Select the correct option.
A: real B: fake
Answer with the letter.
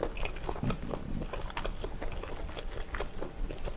A